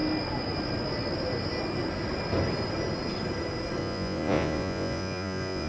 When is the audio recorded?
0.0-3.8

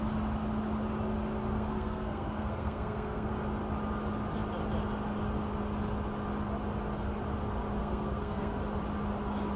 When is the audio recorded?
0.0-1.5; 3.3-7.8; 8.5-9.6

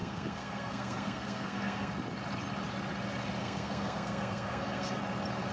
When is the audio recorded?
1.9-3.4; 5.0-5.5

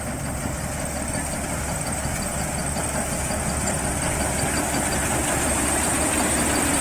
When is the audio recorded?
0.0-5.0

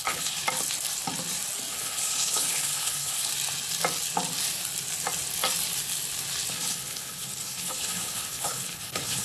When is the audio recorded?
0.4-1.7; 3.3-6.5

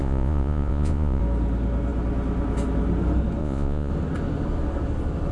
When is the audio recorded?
1.2-3.4; 3.9-5.3

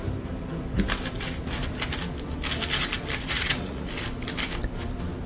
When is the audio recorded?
0.0-3.2; 3.9-5.3